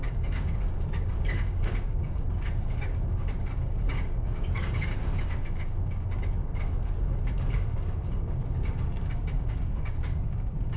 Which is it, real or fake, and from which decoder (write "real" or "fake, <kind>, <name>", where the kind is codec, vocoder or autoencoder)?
fake, codec, DAC